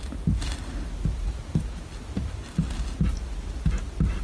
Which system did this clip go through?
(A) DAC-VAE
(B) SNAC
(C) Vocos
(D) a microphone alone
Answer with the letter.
D